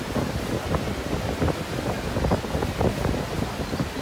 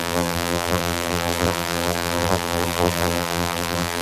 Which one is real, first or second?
first